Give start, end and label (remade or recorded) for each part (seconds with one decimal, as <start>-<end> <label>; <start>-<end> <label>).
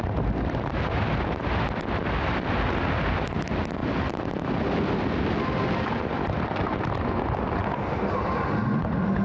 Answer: 0.0-9.2 recorded